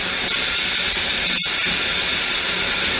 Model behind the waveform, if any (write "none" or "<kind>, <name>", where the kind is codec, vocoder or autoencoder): none